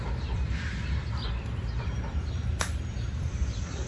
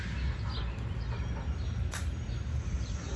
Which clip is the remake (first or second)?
first